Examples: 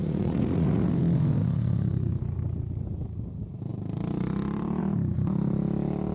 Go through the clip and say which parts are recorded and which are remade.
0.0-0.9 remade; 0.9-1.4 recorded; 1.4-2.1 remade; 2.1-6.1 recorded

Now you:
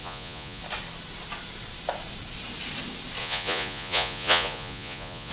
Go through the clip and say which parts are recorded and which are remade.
0.0-0.6 remade; 0.6-3.2 recorded; 3.2-5.3 remade

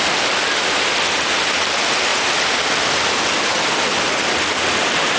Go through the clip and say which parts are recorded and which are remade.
0.0-5.2 recorded

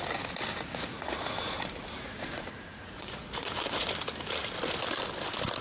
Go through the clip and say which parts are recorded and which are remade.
0.0-0.5 recorded; 0.5-3.9 remade; 3.9-5.6 recorded

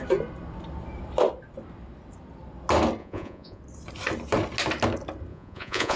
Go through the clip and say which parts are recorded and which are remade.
0.0-3.0 recorded; 3.0-3.6 remade; 3.6-5.3 recorded; 5.3-6.0 remade

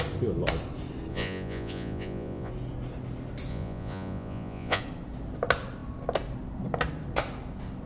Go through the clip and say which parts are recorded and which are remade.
0.0-1.1 recorded; 1.1-2.5 remade; 2.5-3.5 recorded; 3.5-4.8 remade; 4.8-7.9 recorded